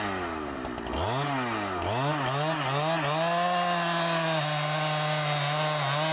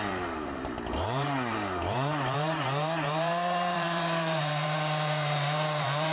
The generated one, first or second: second